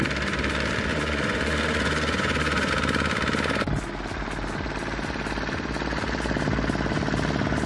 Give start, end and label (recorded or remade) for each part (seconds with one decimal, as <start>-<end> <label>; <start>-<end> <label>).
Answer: 0.0-0.9 recorded; 0.9-2.7 remade; 2.7-7.7 recorded